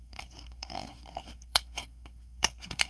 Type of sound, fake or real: fake